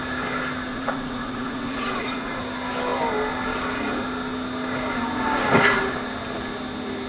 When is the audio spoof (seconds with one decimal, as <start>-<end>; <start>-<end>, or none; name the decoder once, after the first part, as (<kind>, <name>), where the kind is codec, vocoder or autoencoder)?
0.7-2.4 (vocoder, Vocos)